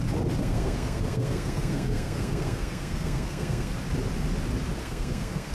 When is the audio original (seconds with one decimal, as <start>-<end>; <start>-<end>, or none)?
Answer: 0.0-0.4; 3.7-4.8